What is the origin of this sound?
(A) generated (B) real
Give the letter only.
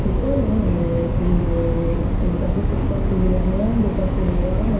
A